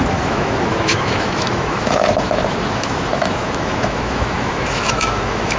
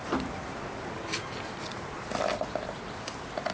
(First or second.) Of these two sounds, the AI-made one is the first